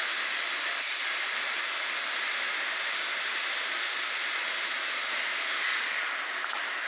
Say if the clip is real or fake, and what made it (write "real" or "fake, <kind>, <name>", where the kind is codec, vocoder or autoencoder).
real